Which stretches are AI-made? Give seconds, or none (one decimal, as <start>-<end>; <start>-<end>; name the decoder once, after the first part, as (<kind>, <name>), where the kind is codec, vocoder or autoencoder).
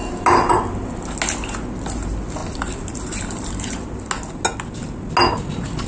2.4-3.8 (vocoder, BigVGAN v2)